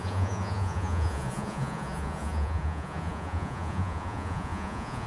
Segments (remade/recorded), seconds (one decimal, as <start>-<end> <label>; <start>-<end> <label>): 0.0-5.1 remade